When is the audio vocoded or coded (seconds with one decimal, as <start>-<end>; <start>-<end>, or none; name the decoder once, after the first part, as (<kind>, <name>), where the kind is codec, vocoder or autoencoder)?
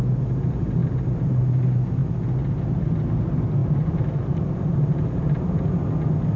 0.8-1.4 (vocoder, BigVGAN v2); 3.6-5.6